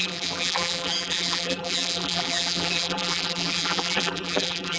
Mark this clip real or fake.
fake